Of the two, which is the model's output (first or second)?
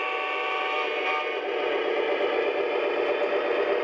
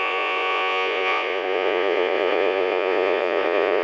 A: second